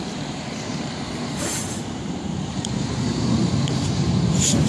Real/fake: fake